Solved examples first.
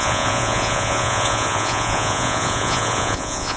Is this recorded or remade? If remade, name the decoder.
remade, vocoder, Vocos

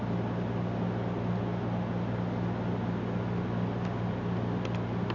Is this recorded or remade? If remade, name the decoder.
recorded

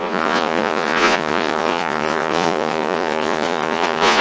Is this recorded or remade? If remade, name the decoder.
remade, vocoder, Vocos